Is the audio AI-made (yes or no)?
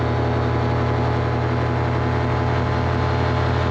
no